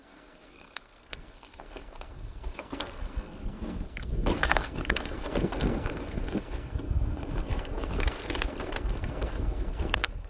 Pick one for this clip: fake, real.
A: fake